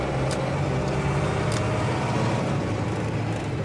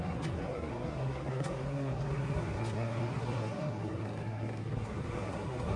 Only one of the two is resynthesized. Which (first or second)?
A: second